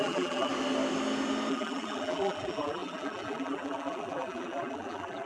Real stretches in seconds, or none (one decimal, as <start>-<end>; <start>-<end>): 0.5-1.5